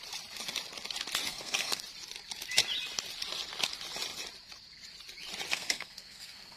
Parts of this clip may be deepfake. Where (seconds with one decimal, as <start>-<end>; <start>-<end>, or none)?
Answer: 1.3-1.8; 5.5-6.6